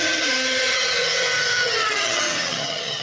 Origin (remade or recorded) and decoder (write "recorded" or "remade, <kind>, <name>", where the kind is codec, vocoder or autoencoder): remade, vocoder, HiFi-GAN